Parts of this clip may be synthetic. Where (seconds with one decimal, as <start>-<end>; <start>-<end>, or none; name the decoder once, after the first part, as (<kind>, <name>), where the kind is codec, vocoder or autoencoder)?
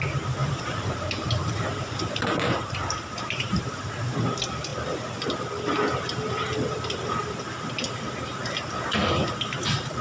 0.4-3.9 (vocoder, BigVGAN v2); 9.0-10.0